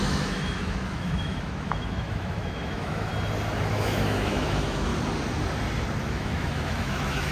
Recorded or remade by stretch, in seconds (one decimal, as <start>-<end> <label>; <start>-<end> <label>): 0.0-3.1 remade; 3.1-3.7 recorded; 3.7-4.9 remade; 4.9-6.0 recorded; 6.0-7.3 remade